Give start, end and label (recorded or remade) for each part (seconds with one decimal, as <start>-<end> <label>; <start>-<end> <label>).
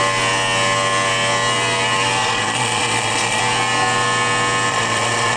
0.0-2.2 recorded; 2.2-3.4 remade; 3.4-4.7 recorded; 4.7-5.4 remade